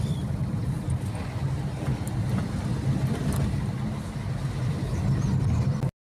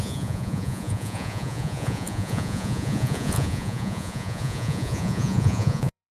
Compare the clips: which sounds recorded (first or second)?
first